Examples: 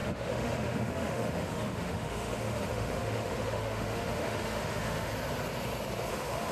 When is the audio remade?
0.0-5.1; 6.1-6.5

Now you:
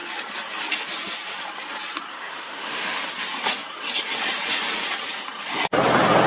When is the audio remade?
2.1-3.0

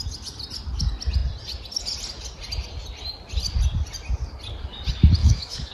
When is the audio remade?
5.2-5.7

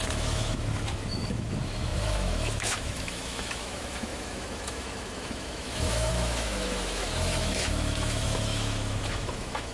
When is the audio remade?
0.0-9.7